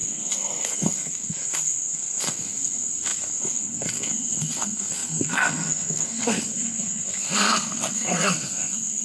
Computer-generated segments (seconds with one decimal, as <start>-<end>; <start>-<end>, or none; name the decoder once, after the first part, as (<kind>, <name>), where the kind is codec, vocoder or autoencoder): 0.0-9.0 (codec, SNAC)